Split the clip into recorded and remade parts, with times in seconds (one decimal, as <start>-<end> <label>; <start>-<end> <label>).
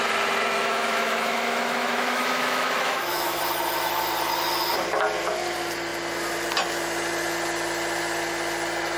0.0-0.6 recorded; 0.6-3.4 remade; 3.4-9.0 recorded